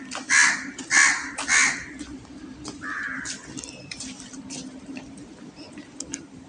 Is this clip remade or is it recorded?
recorded